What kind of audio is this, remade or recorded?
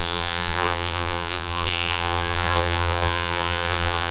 remade